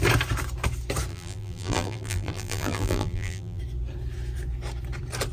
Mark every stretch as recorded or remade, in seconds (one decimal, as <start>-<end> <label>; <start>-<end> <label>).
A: 0.0-1.1 recorded; 1.1-3.6 remade; 3.6-5.3 recorded